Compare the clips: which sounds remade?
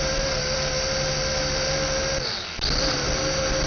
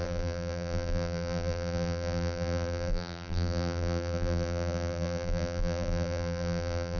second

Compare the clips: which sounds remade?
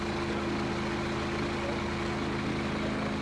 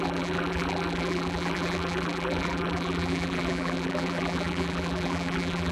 second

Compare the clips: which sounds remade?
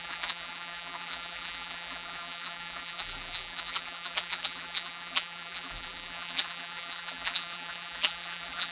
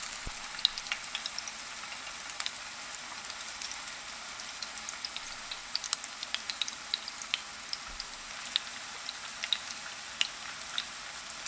first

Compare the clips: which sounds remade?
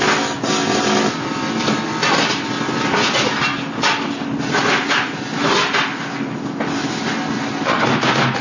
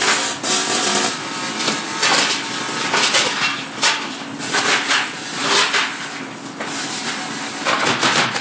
second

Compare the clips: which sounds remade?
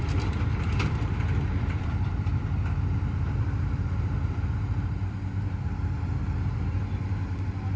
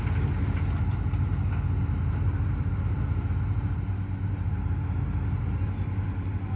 first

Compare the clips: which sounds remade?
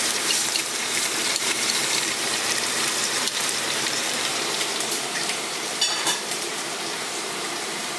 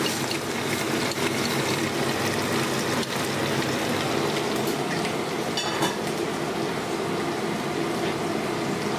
first